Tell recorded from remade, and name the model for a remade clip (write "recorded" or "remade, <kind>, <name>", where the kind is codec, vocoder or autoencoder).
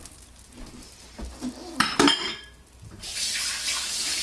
recorded